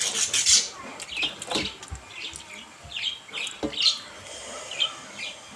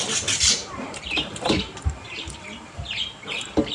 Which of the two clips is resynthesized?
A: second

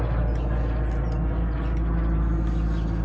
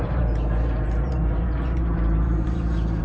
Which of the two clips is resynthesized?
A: second